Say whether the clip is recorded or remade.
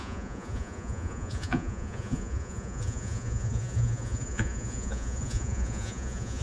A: remade